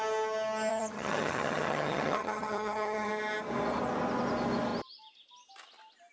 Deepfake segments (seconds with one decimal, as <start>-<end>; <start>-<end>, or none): 0.7-3.1